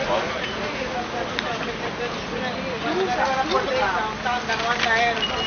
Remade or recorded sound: recorded